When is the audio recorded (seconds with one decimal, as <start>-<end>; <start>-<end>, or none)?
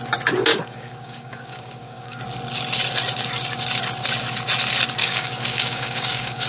0.0-0.5; 2.2-5.0